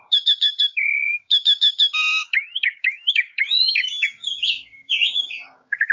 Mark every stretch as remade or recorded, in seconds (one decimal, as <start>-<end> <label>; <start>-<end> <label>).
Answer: 0.0-5.9 remade